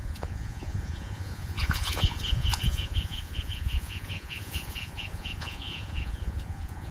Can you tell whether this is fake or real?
fake